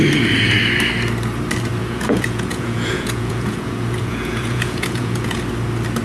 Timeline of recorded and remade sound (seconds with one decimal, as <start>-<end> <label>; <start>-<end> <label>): 0.0-1.8 recorded; 1.8-5.4 remade; 5.4-6.0 recorded